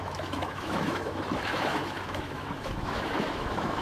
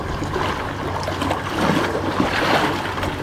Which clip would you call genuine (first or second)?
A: second